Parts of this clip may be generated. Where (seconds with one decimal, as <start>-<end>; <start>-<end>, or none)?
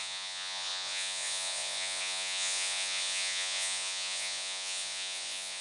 0.0-5.6